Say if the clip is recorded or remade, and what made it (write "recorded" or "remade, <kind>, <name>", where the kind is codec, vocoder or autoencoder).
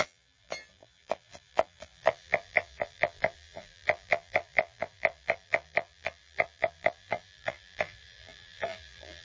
remade, vocoder, BigVGAN v2